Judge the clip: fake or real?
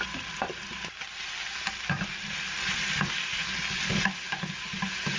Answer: real